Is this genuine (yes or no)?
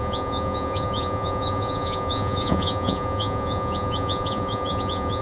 no